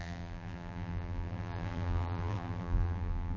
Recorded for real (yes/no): no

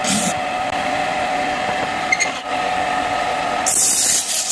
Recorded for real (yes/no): no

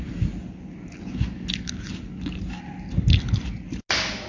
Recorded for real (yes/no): yes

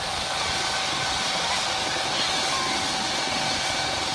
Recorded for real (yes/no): yes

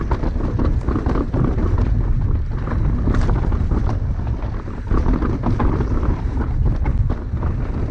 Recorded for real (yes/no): yes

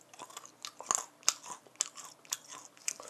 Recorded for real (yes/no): yes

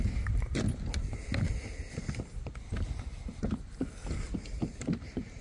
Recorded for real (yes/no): yes